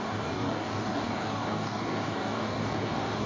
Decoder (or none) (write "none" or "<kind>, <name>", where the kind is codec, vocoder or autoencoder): codec, DAC